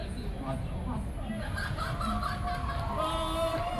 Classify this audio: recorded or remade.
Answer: recorded